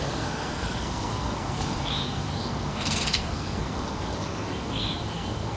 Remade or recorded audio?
remade